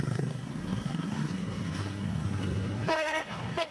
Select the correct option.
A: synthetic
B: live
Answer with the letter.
A